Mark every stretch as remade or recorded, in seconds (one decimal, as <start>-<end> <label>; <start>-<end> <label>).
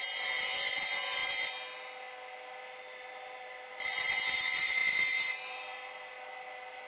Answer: 0.0-6.9 recorded